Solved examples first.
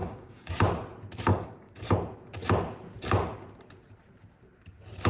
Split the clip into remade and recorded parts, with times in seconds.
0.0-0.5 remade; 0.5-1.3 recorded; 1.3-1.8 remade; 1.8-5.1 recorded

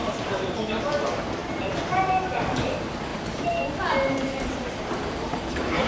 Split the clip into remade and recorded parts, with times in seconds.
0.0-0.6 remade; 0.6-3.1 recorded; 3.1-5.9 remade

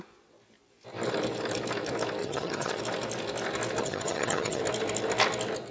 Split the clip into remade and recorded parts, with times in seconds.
0.0-2.2 recorded; 2.2-2.8 remade; 2.8-3.8 recorded; 3.8-4.6 remade; 4.6-5.7 recorded

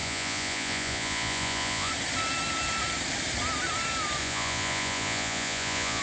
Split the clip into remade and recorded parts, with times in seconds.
0.0-1.9 remade; 1.9-4.2 recorded; 4.2-6.0 remade

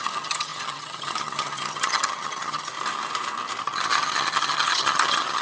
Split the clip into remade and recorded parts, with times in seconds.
0.0-2.7 remade; 2.7-3.6 recorded; 3.6-5.4 remade

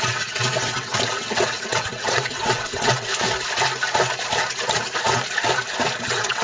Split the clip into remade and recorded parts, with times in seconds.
0.0-3.1 remade; 3.1-6.0 recorded; 6.0-6.4 remade